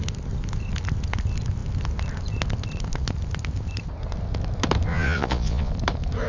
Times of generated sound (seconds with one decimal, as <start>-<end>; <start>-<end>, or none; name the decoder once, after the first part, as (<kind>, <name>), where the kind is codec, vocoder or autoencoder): 4.9-5.7 (vocoder, Vocos)